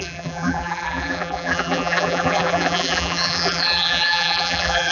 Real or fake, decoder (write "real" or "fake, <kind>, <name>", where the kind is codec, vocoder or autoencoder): fake, vocoder, BigVGAN v2